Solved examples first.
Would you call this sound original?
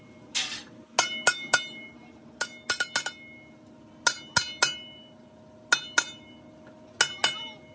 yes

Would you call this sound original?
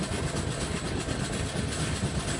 yes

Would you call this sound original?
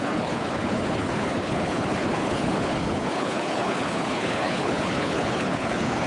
no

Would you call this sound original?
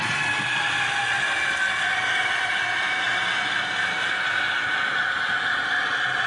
yes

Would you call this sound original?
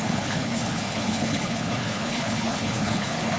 no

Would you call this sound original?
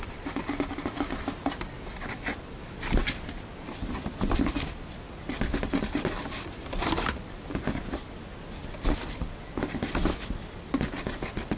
yes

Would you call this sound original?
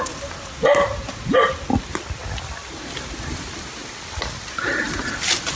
yes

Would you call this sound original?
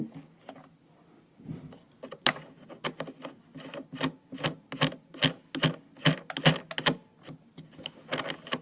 yes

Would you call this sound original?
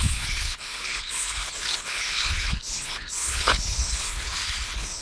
no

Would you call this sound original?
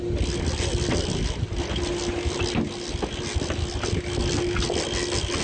yes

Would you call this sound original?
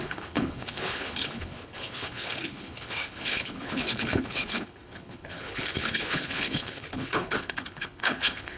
no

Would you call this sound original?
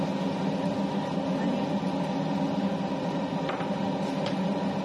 yes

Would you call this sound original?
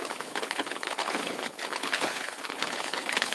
no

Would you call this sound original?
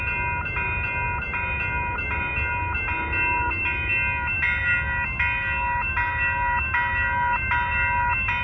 yes